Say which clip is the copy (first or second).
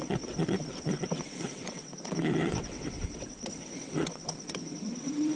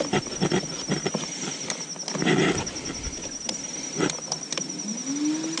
first